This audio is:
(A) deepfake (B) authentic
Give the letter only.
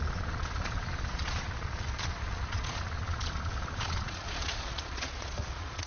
A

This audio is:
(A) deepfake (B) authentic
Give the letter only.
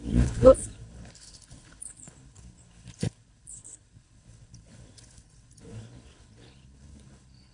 A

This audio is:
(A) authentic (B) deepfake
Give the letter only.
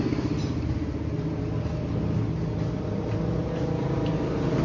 A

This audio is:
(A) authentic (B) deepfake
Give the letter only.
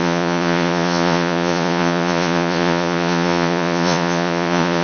B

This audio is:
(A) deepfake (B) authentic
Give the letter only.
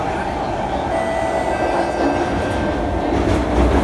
B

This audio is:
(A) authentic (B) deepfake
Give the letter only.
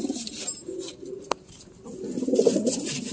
A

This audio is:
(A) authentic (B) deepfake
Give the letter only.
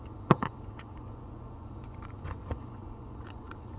B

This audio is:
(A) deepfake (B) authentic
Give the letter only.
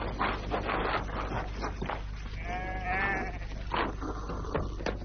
B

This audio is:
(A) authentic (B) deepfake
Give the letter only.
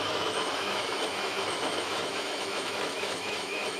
B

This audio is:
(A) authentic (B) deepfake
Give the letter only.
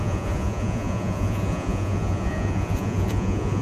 B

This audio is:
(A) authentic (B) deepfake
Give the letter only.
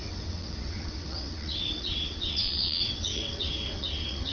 B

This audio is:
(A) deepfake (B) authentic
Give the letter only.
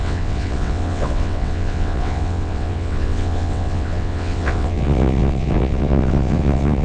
A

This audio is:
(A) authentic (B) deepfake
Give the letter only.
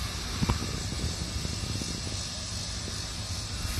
A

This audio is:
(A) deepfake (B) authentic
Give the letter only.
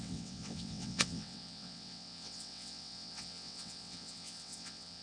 A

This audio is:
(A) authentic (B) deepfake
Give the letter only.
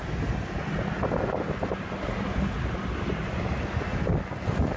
A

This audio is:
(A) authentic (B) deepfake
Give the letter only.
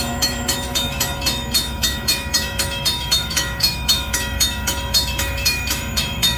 B